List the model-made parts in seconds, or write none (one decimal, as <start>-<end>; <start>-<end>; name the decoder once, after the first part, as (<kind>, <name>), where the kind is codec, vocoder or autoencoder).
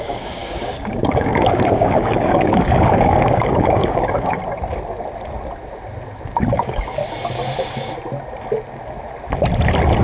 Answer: 0.0-4.4 (codec, DAC); 6.5-7.0